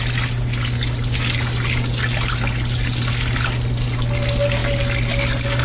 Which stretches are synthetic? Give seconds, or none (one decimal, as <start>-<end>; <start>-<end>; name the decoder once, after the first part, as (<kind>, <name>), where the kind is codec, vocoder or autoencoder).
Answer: none